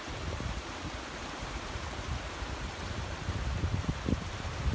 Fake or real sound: fake